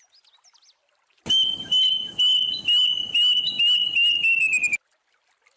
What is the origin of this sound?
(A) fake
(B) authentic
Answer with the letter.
B